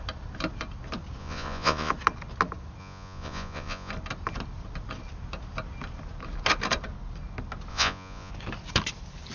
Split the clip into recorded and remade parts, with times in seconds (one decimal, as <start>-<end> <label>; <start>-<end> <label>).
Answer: 0.0-1.2 recorded; 1.2-1.9 remade; 1.9-2.8 recorded; 2.8-3.9 remade; 3.9-7.7 recorded; 7.7-8.3 remade; 8.3-9.3 recorded